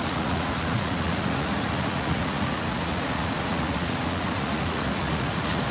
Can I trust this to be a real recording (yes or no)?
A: no